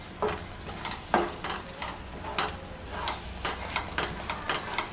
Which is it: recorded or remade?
recorded